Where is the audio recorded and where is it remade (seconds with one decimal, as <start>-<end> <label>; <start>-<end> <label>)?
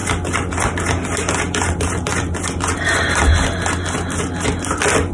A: 0.0-5.1 recorded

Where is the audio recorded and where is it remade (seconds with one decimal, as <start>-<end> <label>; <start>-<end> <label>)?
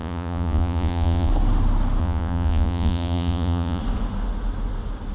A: 0.0-1.3 remade; 1.3-2.0 recorded; 2.0-3.8 remade; 3.8-5.1 recorded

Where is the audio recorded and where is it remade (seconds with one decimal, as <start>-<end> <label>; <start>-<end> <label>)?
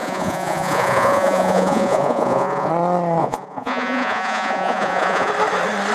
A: 0.0-2.7 remade; 2.7-3.2 recorded; 3.2-5.3 remade; 5.3-5.9 recorded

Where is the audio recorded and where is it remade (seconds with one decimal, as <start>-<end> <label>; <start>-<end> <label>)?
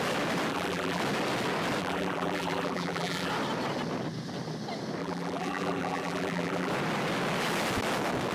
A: 0.0-0.5 recorded; 0.5-1.0 remade; 1.0-1.8 recorded; 1.8-3.3 remade; 3.3-5.0 recorded; 5.0-6.7 remade; 6.7-8.3 recorded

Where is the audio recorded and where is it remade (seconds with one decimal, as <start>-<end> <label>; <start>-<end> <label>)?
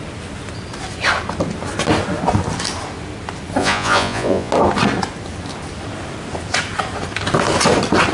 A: 0.0-3.6 recorded; 3.6-4.5 remade; 4.5-8.1 recorded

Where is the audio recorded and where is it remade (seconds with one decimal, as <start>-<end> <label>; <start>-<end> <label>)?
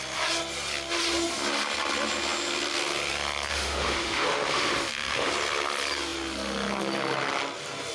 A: 0.0-3.5 recorded; 3.5-5.3 remade; 5.3-7.9 recorded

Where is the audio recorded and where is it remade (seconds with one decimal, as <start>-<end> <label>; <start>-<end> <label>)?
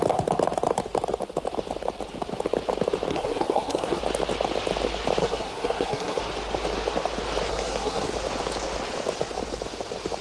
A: 0.0-3.1 recorded; 3.1-4.0 remade; 4.0-5.2 recorded; 5.2-6.2 remade; 6.2-7.5 recorded; 7.5-8.1 remade; 8.1-10.2 recorded